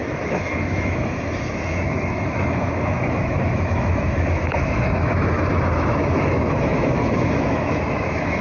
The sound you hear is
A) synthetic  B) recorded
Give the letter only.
A